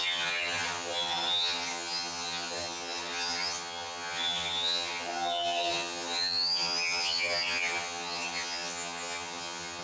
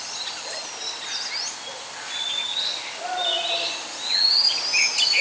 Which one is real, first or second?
second